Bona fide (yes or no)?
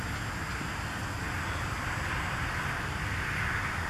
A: yes